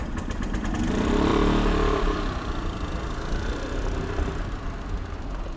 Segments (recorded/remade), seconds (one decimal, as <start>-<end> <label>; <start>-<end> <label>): 0.0-1.3 recorded; 1.3-2.9 remade; 2.9-5.6 recorded

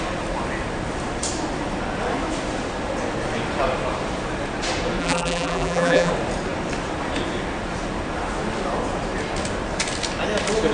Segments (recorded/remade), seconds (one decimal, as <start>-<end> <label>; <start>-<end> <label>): 0.0-5.0 recorded; 5.0-6.1 remade; 6.1-10.7 recorded